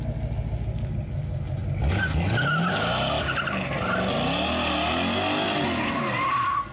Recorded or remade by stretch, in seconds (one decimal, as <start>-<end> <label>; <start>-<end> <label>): 0.0-6.7 recorded